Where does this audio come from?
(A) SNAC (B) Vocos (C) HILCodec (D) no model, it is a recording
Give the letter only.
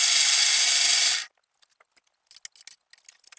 D